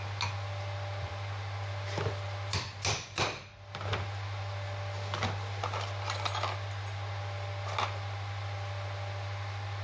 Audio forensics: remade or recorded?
recorded